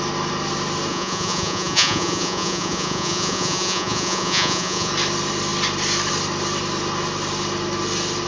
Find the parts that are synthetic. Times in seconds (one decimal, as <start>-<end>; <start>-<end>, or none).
0.9-4.9